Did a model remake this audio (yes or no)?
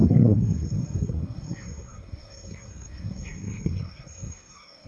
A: yes